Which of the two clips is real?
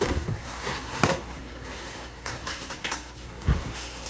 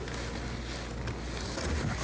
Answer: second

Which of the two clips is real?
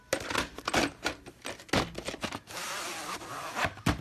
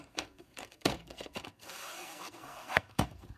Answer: first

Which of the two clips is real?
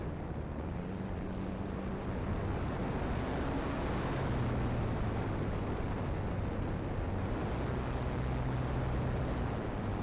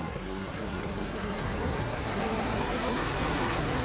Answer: first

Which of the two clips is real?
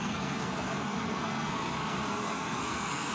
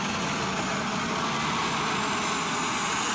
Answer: second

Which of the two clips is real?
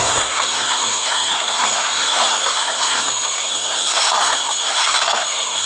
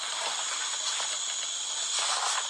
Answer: second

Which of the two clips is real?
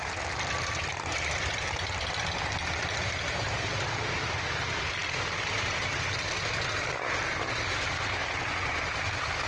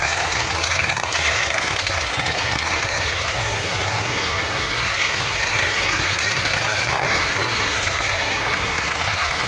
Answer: first